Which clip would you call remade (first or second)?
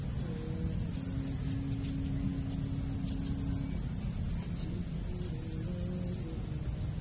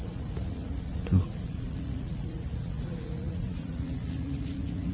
second